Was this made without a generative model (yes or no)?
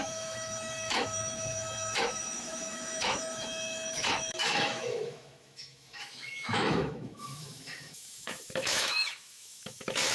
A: no